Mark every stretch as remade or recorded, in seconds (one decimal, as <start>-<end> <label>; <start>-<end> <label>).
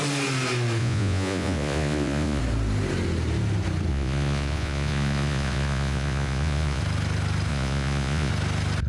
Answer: 0.0-0.8 recorded; 0.8-2.4 remade; 2.4-3.9 recorded; 3.9-6.8 remade; 6.8-7.5 recorded; 7.5-8.3 remade; 8.3-8.9 recorded